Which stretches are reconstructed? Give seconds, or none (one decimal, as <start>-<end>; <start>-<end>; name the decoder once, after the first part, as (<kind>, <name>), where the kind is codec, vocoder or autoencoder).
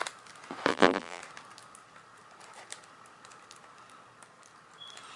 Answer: 0.7-1.2 (vocoder, BigVGAN v2)